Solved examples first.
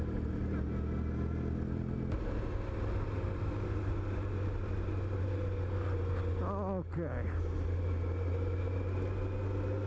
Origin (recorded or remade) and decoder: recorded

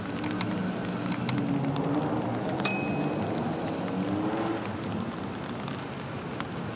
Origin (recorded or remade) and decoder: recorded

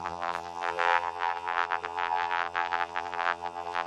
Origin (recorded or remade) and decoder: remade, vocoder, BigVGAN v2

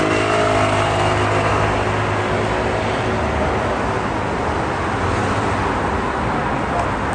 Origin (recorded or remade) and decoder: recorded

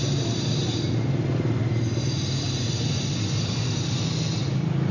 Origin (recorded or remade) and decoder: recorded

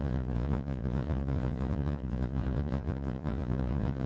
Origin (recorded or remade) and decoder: remade, vocoder, Vocos